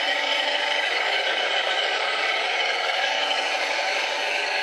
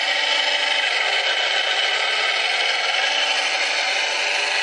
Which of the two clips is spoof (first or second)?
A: first